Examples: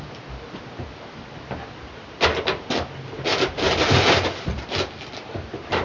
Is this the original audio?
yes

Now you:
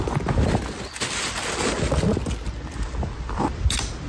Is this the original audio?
yes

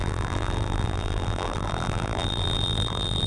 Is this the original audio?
no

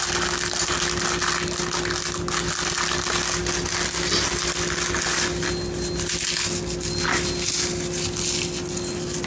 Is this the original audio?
yes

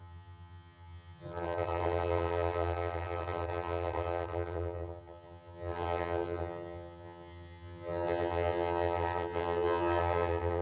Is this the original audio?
no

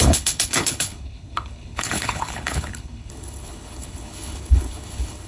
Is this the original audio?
no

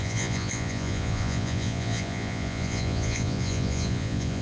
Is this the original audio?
no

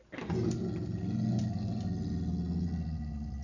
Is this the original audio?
yes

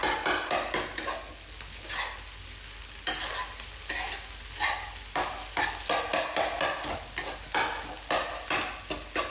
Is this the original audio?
yes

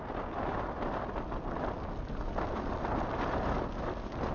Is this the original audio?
yes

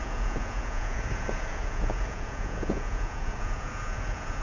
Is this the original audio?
no